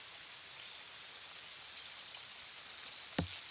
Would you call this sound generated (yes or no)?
no